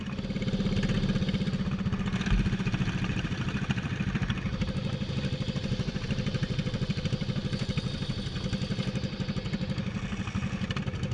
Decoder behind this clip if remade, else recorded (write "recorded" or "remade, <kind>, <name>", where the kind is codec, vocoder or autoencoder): recorded